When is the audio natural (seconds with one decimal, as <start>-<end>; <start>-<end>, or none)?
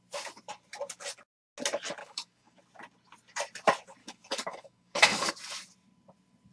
0.0-2.0; 2.6-4.0; 5.3-6.5